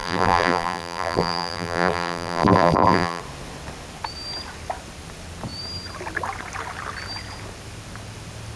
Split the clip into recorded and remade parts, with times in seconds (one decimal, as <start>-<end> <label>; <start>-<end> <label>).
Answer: 0.0-3.2 remade; 3.2-8.6 recorded